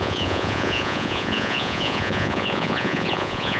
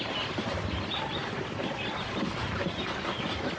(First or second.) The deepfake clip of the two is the first